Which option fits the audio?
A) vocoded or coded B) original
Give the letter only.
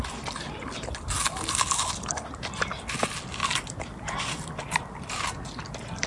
B